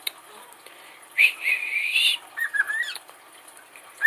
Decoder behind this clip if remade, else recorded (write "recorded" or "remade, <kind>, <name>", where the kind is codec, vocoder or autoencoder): recorded